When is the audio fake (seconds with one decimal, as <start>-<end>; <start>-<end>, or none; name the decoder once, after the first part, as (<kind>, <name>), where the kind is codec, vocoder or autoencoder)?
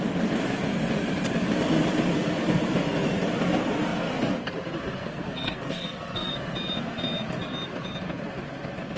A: 5.0-6.3 (codec, SNAC)